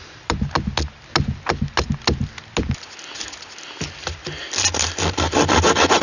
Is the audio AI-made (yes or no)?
no